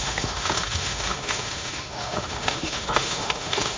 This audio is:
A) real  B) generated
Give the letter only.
B